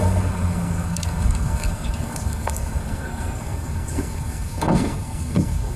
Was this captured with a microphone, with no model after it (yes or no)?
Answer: no